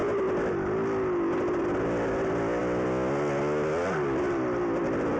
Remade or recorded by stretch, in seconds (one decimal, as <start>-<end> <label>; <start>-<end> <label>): 0.0-5.2 recorded